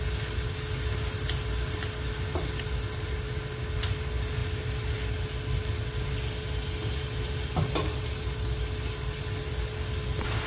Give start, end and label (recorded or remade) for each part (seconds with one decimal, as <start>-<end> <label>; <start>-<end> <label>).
0.0-10.5 recorded